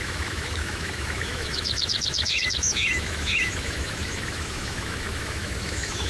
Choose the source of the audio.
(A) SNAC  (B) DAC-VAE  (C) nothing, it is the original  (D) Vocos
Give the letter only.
B